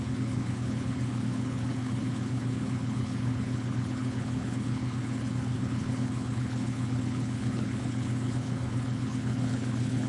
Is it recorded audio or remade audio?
remade